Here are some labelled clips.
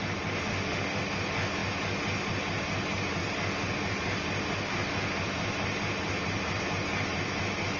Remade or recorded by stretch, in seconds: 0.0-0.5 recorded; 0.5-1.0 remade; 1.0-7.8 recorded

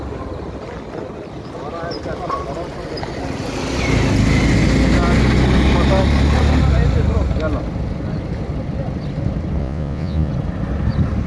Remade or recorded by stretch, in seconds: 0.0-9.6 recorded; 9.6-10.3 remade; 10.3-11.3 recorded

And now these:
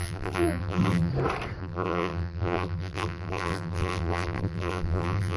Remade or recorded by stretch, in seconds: 0.0-1.1 remade; 1.1-1.6 recorded; 1.6-5.4 remade

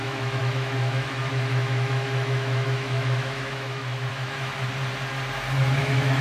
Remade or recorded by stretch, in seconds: 0.0-4.5 remade; 4.5-5.8 recorded; 5.8-6.2 remade